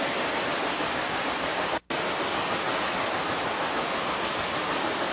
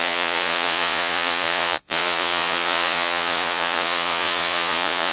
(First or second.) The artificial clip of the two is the second